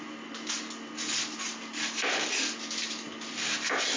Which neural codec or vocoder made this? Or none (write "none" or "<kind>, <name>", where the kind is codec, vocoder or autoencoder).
none